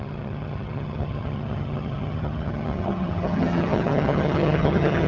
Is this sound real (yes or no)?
no